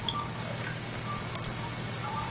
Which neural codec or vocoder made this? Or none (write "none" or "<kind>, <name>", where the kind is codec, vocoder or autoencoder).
none